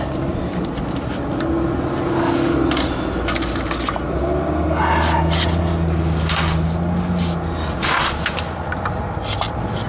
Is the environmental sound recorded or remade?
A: recorded